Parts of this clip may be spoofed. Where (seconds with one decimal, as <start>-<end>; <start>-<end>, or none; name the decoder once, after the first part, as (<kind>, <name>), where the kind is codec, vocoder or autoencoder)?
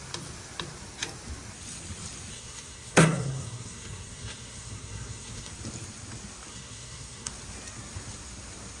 2.3-5.5 (codec, SNAC); 6.5-7.3